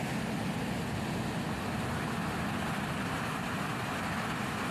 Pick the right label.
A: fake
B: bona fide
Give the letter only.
B